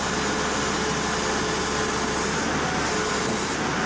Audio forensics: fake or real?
real